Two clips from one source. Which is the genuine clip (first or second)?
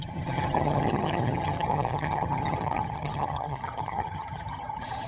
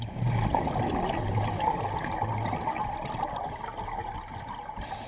second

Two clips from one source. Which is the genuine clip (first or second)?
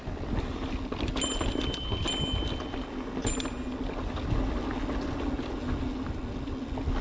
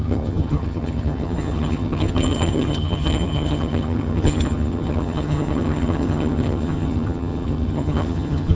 first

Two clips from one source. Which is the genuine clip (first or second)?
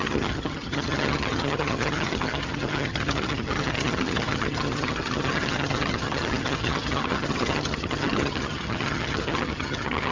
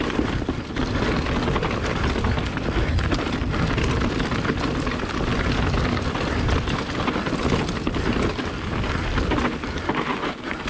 second